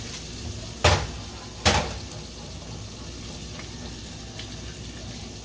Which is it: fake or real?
real